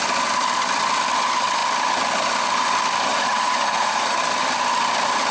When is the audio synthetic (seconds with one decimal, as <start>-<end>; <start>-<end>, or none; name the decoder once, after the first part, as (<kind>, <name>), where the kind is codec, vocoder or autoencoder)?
3.1-4.2 (vocoder, Vocos)